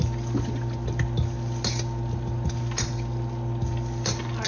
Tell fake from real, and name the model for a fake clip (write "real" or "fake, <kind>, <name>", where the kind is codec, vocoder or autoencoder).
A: real